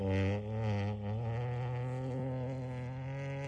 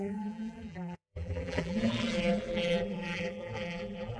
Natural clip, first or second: first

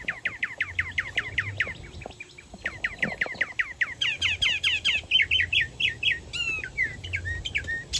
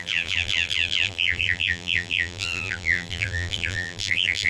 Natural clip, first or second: first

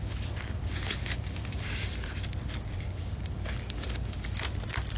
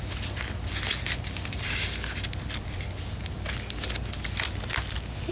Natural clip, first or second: second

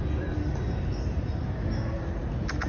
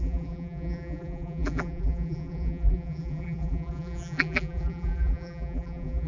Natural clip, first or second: first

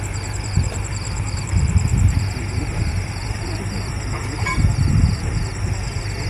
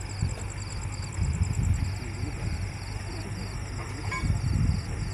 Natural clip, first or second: second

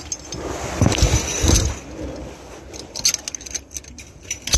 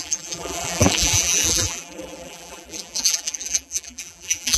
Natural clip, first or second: first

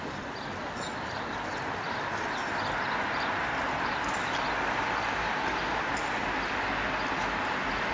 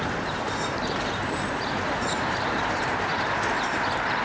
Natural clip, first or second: first